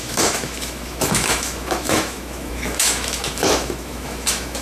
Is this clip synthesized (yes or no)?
yes